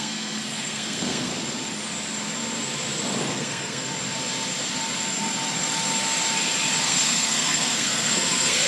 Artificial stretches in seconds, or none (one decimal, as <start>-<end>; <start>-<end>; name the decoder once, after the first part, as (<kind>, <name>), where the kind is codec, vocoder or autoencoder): 0.0-1.3 (codec, SNAC); 3.3-3.8; 6.8-8.7